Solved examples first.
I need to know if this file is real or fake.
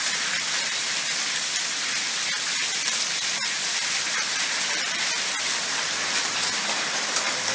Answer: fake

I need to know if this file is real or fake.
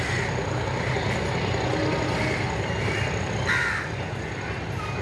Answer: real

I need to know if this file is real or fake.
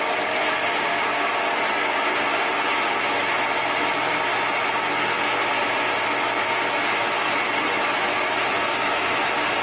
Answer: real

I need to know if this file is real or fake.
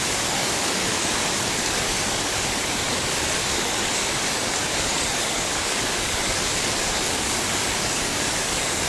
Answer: fake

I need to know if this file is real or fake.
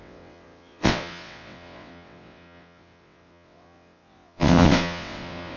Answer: fake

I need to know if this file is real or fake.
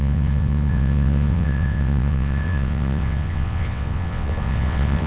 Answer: fake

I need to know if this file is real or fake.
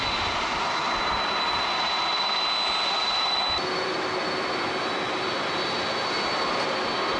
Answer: real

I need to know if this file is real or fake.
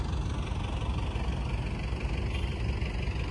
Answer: real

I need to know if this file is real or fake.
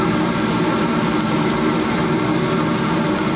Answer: real